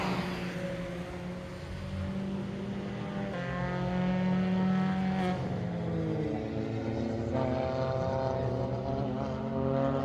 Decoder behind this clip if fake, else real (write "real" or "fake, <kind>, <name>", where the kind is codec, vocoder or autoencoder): real